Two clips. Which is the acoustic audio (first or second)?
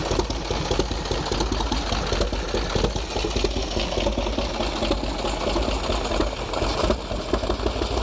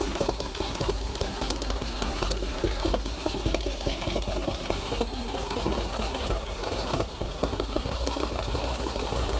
first